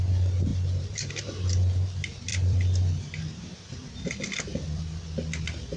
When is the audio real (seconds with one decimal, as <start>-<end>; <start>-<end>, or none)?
0.0-2.3; 4.1-4.5; 5.0-5.8